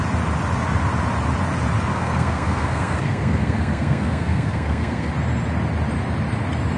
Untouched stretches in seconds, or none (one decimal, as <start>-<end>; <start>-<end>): 0.0-1.9; 5.1-6.8